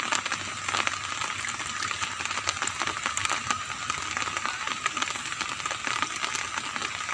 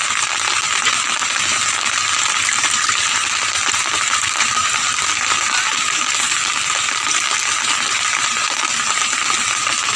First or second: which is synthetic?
second